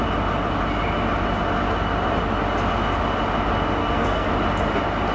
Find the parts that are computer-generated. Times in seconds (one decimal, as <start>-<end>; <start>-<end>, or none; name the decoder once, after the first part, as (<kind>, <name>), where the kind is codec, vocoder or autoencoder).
3.8-4.3 (codec, SNAC)